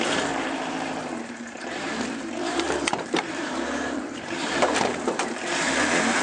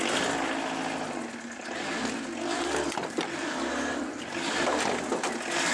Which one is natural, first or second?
second